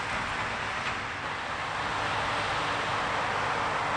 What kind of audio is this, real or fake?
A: real